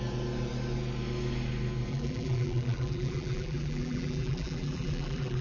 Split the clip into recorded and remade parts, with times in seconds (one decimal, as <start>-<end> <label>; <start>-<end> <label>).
0.0-1.9 recorded; 1.9-5.4 remade